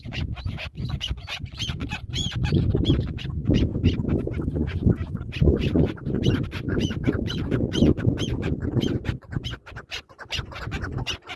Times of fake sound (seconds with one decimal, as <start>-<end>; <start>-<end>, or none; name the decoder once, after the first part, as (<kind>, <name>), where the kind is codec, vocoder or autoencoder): 0.0-3.7 (vocoder, Vocos); 4.5-11.4